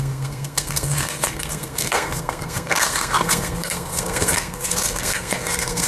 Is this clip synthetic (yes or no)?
yes